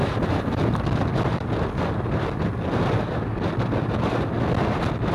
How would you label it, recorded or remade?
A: recorded